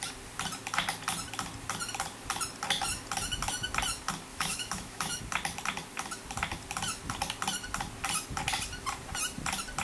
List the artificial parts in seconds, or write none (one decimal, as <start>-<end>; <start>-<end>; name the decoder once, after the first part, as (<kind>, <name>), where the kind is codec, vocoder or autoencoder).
4.3-5.2 (autoencoder, DAC-VAE)